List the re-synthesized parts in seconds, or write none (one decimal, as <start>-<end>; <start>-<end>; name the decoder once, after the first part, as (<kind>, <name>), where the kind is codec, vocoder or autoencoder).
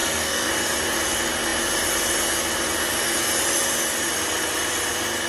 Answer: 0.0-0.5 (codec, SNAC)